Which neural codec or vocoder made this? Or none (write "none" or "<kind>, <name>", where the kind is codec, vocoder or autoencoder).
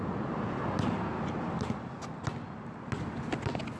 none